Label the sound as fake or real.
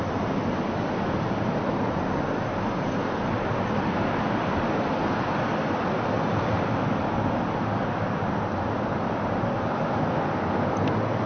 real